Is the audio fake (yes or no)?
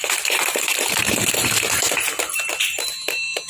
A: no